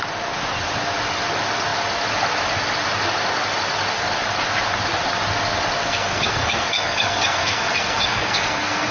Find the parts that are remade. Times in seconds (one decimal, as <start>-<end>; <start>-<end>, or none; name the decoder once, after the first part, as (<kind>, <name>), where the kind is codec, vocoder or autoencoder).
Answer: 5.8-8.9 (codec, SNAC)

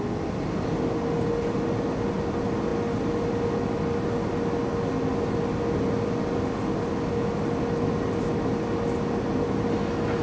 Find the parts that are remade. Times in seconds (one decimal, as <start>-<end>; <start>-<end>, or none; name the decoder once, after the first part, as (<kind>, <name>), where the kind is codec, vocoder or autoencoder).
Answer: none

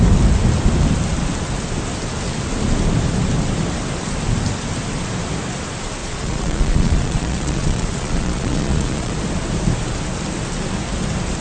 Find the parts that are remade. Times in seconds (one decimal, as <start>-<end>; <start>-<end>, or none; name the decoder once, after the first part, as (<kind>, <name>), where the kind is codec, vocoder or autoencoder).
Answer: 6.0-9.1 (vocoder, Vocos)

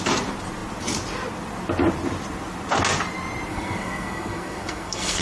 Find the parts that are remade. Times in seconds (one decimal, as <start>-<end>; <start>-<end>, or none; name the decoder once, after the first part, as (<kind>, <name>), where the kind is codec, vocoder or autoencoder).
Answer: 3.5-5.2 (codec, SNAC)

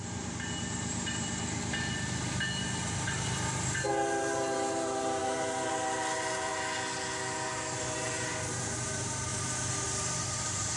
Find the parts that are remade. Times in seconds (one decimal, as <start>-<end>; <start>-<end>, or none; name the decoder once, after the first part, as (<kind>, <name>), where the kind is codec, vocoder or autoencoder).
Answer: 0.0-6.5 (vocoder, BigVGAN v2); 7.5-9.3; 10.2-10.8

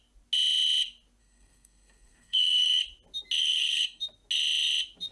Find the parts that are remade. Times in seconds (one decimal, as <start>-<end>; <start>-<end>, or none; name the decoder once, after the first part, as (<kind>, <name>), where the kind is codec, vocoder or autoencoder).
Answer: 1.2-2.8 (codec, SNAC); 3.4-4.0

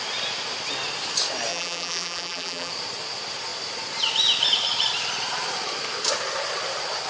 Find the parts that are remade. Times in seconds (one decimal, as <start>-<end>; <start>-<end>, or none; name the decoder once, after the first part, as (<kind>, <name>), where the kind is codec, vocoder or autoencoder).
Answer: 1.5-2.7 (vocoder, BigVGAN v2)